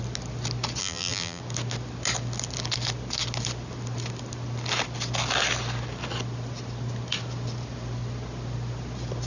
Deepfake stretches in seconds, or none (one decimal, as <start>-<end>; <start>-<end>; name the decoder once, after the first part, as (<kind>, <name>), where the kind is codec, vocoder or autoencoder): 0.8-1.4 (vocoder, BigVGAN v2)